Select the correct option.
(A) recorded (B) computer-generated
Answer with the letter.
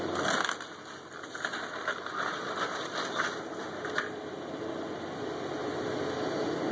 A